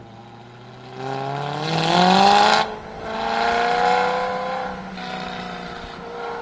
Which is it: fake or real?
real